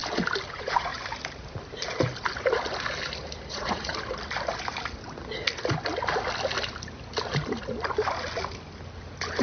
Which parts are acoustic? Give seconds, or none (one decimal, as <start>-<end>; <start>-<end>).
0.0-0.5; 0.9-3.5; 3.9-9.4